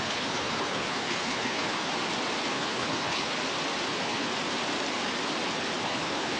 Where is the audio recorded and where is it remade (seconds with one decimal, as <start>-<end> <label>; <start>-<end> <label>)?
0.0-1.9 remade; 1.9-2.5 recorded; 2.5-3.3 remade; 3.3-3.9 recorded; 3.9-4.3 remade; 4.3-5.8 recorded; 5.8-6.4 remade

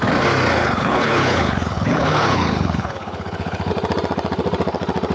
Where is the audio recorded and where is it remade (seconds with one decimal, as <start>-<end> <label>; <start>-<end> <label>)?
0.0-0.6 recorded; 0.6-3.7 remade; 3.7-5.1 recorded

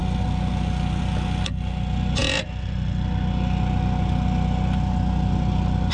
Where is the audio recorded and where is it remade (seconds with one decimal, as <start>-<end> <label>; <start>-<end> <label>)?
0.0-5.9 recorded

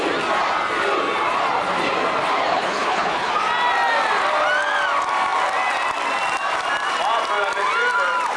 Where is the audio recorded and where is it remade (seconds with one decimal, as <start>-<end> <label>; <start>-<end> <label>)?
0.0-2.5 recorded; 2.5-3.3 remade; 3.3-8.4 recorded

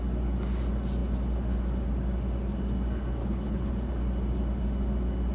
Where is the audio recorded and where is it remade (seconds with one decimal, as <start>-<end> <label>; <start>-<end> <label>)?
0.0-3.2 recorded; 3.2-3.7 remade; 3.7-5.3 recorded

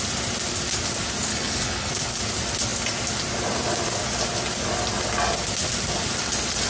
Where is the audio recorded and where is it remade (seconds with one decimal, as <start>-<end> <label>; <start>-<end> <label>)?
0.0-1.3 recorded; 1.3-1.9 remade; 1.9-6.7 recorded

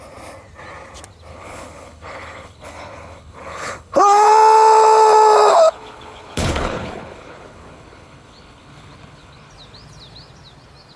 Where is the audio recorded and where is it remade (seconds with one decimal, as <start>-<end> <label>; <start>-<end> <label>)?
0.0-1.3 recorded; 1.3-4.3 remade; 4.3-5.5 recorded; 5.5-9.5 remade; 9.5-11.0 recorded